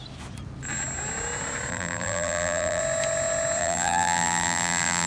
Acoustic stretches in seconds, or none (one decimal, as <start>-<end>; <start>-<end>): 0.0-1.7; 2.8-3.6

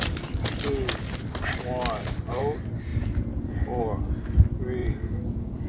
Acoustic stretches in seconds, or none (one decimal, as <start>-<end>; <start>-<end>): 0.0-1.0; 2.4-2.9; 3.8-4.8

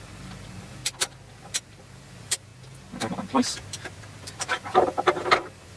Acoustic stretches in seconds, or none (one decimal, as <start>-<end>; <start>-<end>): 0.8-1.3; 2.5-4.7

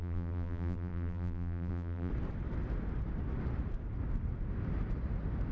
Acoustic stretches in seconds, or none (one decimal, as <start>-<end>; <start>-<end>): 2.1-5.5

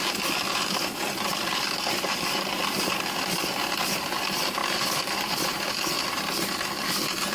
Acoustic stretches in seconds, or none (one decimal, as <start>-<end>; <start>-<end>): 0.0-1.3; 2.6-4.6; 5.7-7.3

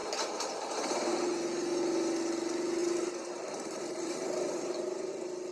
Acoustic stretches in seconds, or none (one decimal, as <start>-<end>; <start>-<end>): 1.1-2.8; 5.1-5.5

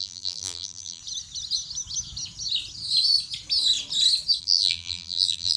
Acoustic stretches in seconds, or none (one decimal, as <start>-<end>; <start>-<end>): 1.0-4.4

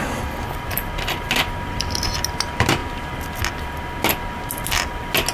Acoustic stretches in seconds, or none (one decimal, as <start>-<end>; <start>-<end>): 0.0-5.3